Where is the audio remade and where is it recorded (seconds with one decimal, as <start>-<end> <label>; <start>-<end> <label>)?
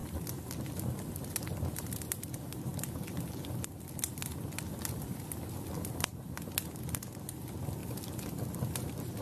0.0-2.2 remade; 2.2-2.7 recorded; 2.7-6.1 remade; 6.1-7.8 recorded; 7.8-9.2 remade